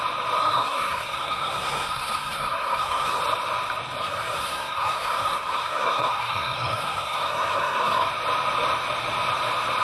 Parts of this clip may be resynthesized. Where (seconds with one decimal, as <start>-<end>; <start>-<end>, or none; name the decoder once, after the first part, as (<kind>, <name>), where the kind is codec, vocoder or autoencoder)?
0.4-3.2 (codec, SNAC); 4.0-8.1